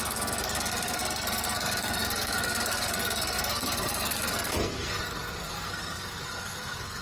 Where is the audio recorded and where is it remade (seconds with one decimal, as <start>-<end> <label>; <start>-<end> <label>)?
0.0-7.0 remade